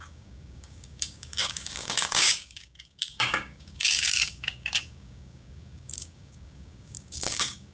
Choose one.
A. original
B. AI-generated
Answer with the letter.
B